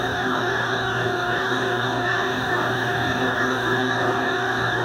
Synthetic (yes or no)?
yes